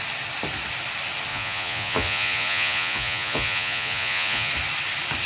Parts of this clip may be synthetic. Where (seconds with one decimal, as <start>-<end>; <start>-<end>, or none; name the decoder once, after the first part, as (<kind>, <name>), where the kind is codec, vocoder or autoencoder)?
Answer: 1.3-4.5 (vocoder, Vocos)